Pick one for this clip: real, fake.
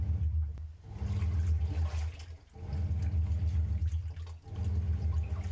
real